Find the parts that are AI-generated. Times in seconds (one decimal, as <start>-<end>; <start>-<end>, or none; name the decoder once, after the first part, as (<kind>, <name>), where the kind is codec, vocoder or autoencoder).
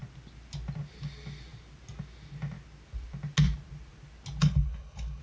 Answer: 4.4-5.2 (codec, HILCodec)